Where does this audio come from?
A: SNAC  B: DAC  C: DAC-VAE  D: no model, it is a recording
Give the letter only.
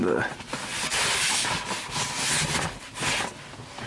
D